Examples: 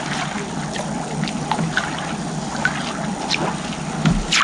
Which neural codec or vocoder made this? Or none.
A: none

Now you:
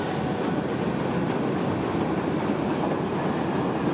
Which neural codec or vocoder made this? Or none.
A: none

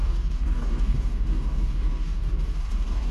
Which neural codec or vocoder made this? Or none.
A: codec, DAC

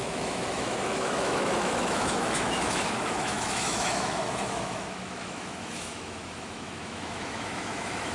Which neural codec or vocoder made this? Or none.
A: autoencoder, DAC-VAE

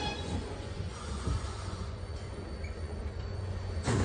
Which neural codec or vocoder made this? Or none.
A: vocoder, Vocos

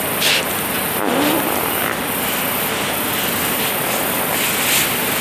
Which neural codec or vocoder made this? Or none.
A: none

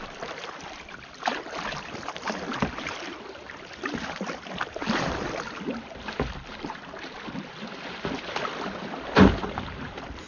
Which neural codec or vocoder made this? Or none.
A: none